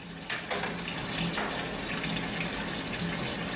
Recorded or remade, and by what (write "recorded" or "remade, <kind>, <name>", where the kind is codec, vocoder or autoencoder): recorded